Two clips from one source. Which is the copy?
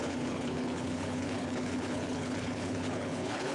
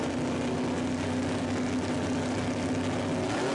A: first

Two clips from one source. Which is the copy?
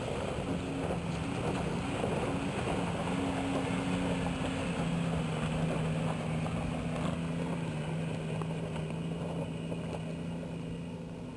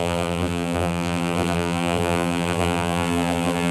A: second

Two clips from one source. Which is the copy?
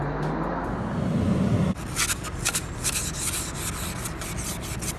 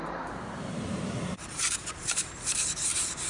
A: second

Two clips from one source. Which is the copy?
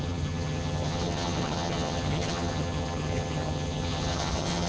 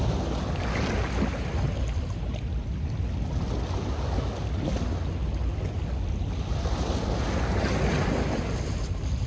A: first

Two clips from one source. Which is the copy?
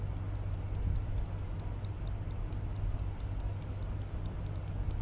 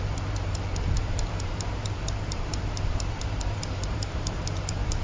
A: second